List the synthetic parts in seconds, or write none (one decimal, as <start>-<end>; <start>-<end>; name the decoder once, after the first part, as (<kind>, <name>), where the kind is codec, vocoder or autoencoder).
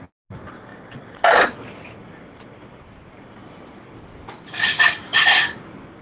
none